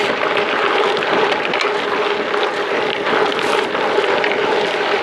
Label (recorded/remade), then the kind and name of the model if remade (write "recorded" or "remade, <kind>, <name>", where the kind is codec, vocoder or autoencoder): recorded